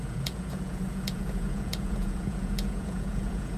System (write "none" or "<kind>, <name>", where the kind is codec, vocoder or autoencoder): vocoder, Vocos